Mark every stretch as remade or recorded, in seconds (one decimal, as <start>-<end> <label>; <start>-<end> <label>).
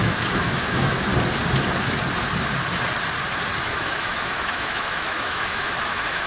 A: 0.0-1.1 remade; 1.1-3.6 recorded; 3.6-6.3 remade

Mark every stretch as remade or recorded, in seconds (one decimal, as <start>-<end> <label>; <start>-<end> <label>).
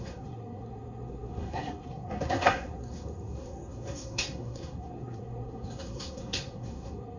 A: 0.0-7.2 remade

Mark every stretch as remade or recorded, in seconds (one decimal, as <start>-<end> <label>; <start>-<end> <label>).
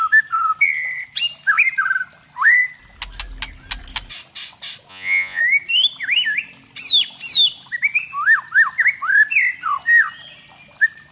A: 0.0-4.9 recorded; 4.9-5.4 remade; 5.4-11.1 recorded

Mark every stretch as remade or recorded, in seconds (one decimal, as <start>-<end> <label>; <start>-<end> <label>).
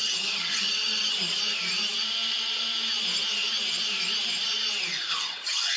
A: 0.0-1.4 remade; 1.4-5.1 recorded; 5.1-5.8 remade